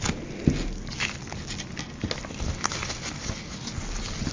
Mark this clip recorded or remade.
recorded